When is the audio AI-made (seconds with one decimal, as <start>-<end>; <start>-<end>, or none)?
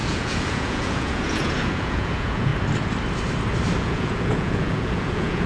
0.0-2.5; 3.8-5.5